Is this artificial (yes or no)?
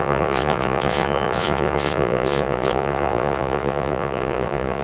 yes